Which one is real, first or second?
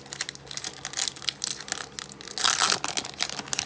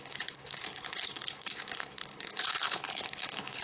first